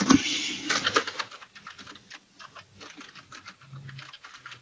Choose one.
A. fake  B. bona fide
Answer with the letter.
B